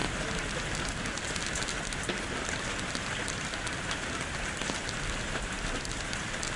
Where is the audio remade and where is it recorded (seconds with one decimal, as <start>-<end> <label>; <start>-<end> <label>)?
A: 0.0-6.6 recorded